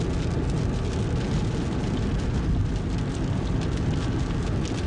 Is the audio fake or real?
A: real